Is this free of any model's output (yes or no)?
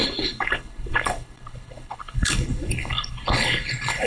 no